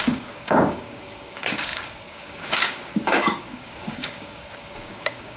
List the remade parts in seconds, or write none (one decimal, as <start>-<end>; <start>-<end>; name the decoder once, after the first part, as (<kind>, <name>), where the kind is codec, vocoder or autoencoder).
0.0-5.4 (codec, DAC)